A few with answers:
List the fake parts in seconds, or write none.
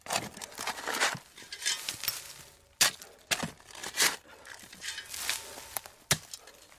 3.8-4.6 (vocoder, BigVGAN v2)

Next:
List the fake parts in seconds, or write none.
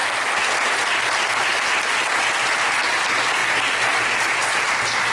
none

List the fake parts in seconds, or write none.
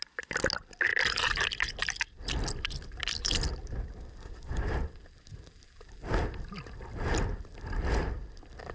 0.9-1.6 (vocoder, BigVGAN v2); 3.0-4.5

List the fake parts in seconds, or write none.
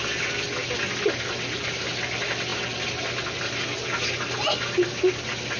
none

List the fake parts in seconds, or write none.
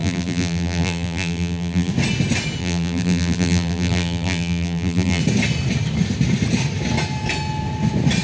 0.0-1.9 (vocoder, BigVGAN v2); 2.6-5.2